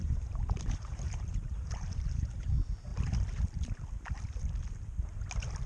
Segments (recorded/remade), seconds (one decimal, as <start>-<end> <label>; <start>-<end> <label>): 0.0-2.9 remade; 2.9-5.7 recorded